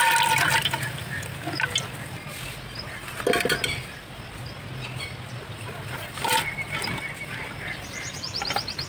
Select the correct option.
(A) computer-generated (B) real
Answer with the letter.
B